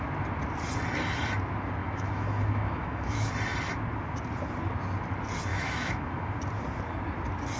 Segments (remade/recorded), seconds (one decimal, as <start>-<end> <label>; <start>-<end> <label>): 0.0-1.8 recorded; 1.8-3.3 remade; 3.3-5.5 recorded; 5.5-6.3 remade; 6.3-7.6 recorded